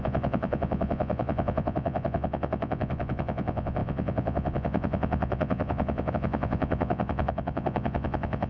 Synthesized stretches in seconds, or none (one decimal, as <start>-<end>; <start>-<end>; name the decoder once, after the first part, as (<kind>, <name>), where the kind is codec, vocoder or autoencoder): 0.0-8.5 (vocoder, Vocos)